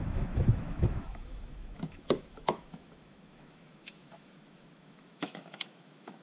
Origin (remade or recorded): remade